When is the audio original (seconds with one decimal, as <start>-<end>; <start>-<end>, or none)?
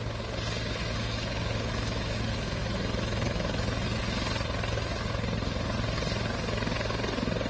0.0-0.8; 4.0-7.5